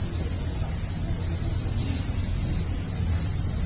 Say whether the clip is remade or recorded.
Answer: recorded